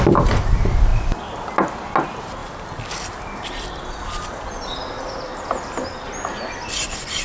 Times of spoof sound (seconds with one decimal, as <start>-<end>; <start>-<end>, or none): none